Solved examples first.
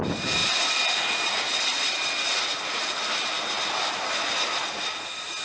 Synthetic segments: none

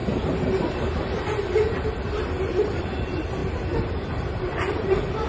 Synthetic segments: 0.0-3.4 (vocoder, BigVGAN v2); 4.0-5.3

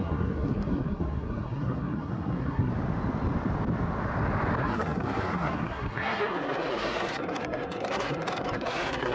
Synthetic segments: 0.0-2.7 (codec, SNAC); 4.6-9.1

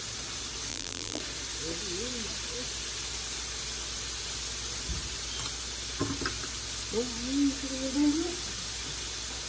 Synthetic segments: 0.7-1.2 (vocoder, BigVGAN v2)

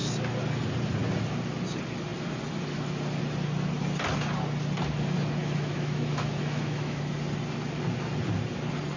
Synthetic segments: 5.4-7.0 (autoencoder, DAC-VAE)